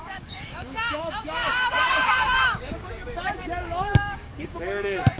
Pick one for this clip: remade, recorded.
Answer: remade